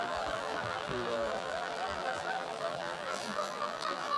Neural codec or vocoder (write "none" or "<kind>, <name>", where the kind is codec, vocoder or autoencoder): vocoder, BigVGAN v2